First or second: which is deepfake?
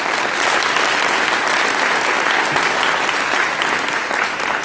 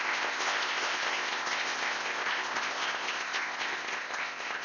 second